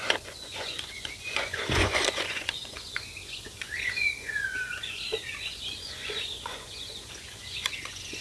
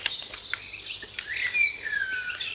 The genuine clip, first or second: second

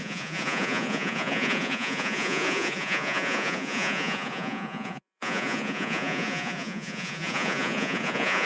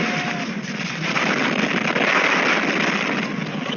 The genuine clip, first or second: second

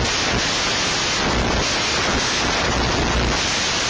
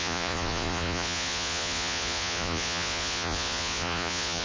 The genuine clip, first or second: first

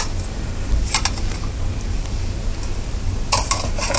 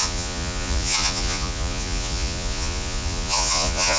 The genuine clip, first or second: first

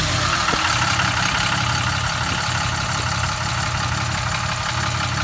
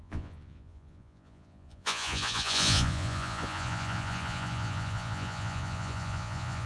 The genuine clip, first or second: first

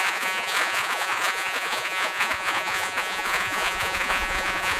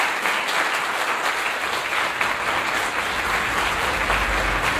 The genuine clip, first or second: second